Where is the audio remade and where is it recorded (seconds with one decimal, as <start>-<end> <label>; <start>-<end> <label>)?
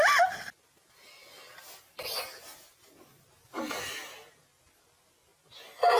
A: 0.0-6.0 recorded